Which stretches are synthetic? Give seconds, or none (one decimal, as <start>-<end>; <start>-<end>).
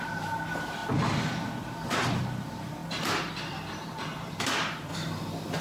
0.0-4.9